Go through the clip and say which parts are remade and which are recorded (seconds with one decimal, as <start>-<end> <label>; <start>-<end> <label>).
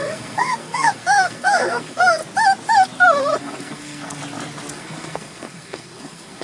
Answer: 0.0-2.2 remade; 2.2-3.4 recorded; 3.4-4.2 remade; 4.2-4.7 recorded; 4.7-6.4 remade